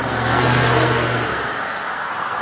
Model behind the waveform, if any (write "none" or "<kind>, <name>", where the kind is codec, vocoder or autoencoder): codec, SNAC